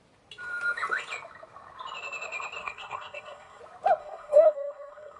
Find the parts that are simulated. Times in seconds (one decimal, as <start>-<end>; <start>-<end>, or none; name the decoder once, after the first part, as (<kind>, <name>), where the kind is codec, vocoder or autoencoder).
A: 2.6-3.6 (codec, SNAC); 4.0-5.2